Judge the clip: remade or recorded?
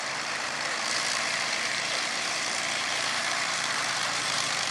remade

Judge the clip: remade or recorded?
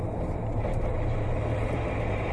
remade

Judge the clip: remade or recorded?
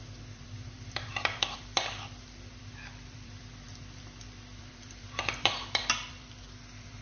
remade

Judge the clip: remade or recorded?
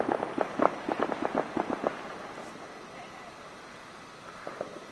remade